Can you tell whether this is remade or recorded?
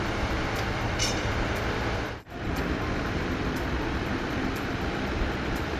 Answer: remade